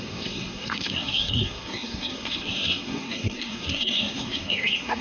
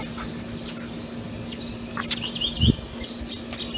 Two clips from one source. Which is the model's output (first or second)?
first